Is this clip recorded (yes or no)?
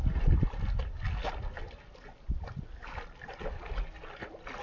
yes